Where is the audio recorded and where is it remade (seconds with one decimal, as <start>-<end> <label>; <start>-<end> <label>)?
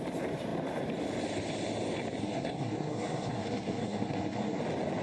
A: 0.0-2.2 recorded; 2.2-4.6 remade; 4.6-5.0 recorded